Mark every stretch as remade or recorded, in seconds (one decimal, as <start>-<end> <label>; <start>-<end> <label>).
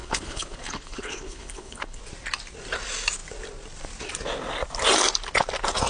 0.0-2.0 remade; 2.0-5.9 recorded